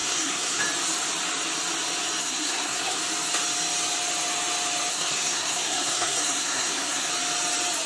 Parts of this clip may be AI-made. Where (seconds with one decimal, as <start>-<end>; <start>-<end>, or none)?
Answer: 0.0-0.6; 2.2-3.0; 4.9-7.1